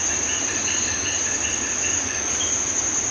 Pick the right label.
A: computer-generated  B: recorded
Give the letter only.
B